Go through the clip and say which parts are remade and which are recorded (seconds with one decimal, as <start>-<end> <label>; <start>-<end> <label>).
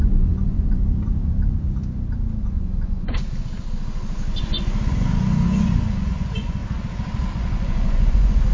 0.0-0.8 remade; 0.8-2.4 recorded; 2.4-3.2 remade; 3.2-4.4 recorded; 4.4-6.6 remade; 6.6-7.3 recorded; 7.3-8.5 remade